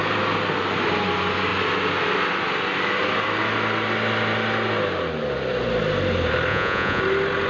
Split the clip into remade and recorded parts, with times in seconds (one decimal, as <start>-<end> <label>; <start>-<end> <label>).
0.0-6.5 recorded; 6.5-7.0 remade; 7.0-7.5 recorded